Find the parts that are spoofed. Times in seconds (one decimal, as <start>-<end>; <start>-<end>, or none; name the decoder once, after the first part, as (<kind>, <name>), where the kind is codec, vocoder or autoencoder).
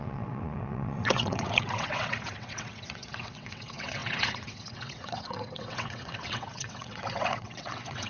0.0-8.1 (vocoder, WaveNeXt)